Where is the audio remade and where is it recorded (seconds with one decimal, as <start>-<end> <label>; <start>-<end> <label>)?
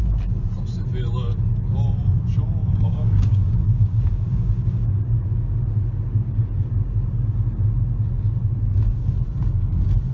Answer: 0.0-2.6 recorded; 2.6-5.0 remade; 5.0-10.1 recorded